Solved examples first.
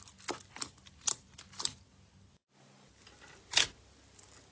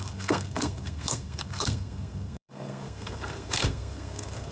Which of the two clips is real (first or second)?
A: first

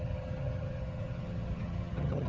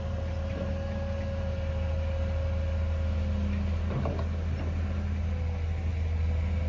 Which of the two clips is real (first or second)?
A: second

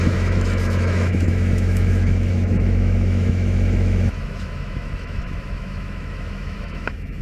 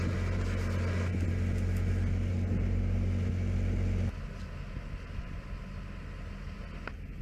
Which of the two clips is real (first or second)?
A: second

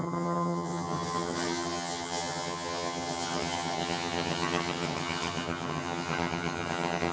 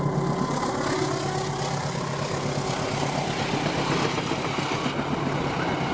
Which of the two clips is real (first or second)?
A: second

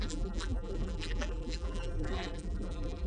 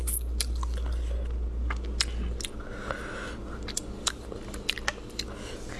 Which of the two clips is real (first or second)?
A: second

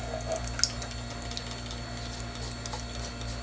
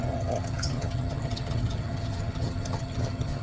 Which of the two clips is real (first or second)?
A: first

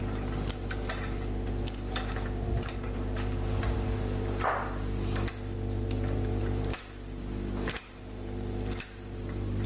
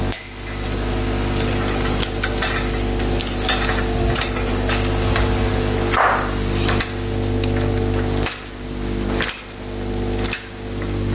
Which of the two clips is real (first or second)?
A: second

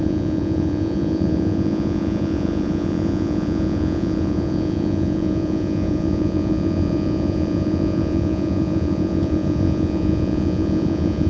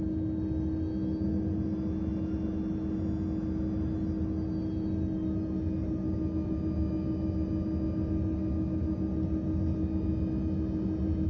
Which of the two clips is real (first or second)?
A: second